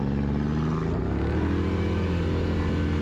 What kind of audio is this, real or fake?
real